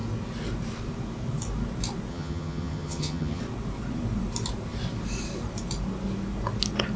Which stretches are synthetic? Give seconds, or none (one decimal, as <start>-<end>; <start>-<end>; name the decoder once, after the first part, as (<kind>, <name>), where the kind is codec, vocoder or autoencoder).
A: 2.1-3.4 (vocoder, HiFi-GAN)